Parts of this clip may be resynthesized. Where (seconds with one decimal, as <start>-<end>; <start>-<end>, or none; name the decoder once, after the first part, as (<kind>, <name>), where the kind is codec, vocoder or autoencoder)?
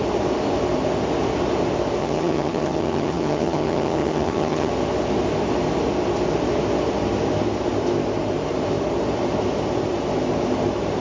2.0-4.7 (vocoder, HiFi-GAN)